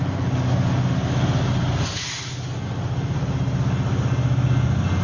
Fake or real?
real